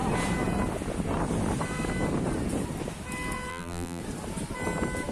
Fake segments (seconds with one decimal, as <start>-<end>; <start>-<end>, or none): 3.5-4.0